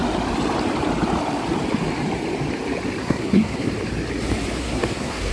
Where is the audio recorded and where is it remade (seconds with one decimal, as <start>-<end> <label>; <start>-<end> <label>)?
0.0-3.0 recorded; 3.0-3.7 remade; 3.7-4.6 recorded; 4.6-5.3 remade